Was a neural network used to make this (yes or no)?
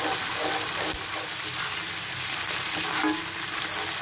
no